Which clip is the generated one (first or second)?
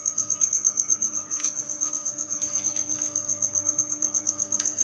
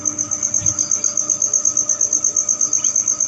first